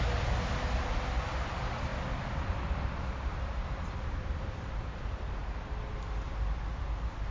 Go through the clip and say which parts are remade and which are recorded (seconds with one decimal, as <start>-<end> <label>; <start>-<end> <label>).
0.0-5.4 remade; 5.4-6.7 recorded; 6.7-7.3 remade